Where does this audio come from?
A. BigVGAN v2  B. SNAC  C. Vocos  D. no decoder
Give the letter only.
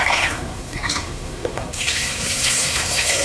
B